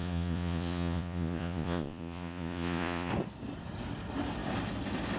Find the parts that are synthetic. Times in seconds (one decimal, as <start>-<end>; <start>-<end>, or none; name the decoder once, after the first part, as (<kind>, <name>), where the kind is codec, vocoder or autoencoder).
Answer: 0.0-3.1 (vocoder, Vocos)